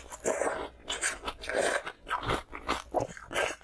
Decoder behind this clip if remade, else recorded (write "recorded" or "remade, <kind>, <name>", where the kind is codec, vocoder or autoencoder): recorded